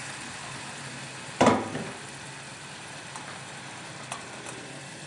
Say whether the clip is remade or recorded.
recorded